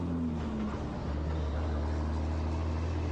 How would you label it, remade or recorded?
recorded